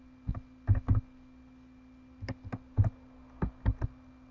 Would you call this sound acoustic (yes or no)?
yes